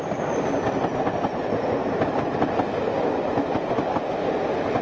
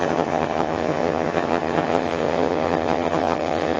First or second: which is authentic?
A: first